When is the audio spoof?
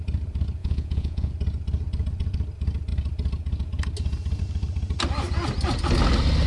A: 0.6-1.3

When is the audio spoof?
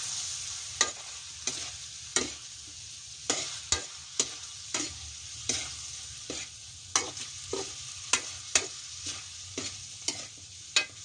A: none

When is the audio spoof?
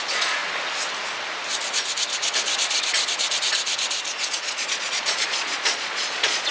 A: 0.0-0.4; 4.3-6.5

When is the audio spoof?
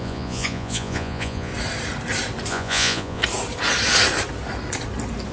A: 0.0-1.5; 2.5-3.2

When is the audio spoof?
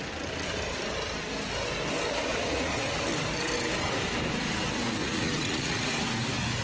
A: 2.3-2.9; 5.0-5.9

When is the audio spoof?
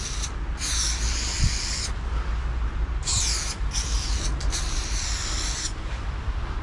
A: none